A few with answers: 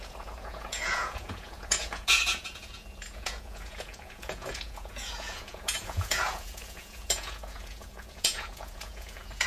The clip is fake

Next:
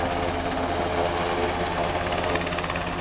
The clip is real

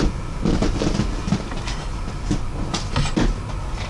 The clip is real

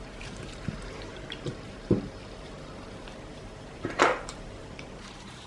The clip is fake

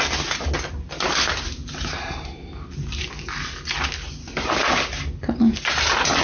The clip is real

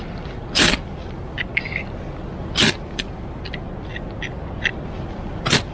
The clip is real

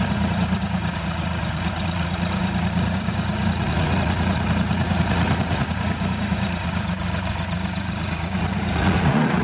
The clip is fake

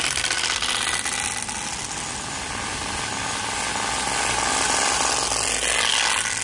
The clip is real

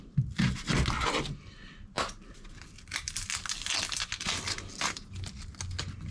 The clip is real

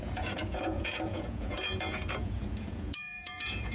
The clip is fake